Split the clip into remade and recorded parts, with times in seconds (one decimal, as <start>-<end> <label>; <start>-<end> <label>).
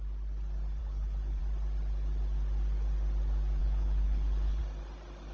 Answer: 0.0-0.8 recorded; 0.8-1.4 remade; 1.4-3.6 recorded; 3.6-4.6 remade; 4.6-5.3 recorded